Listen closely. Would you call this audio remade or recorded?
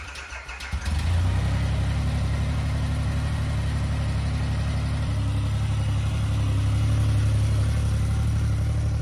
recorded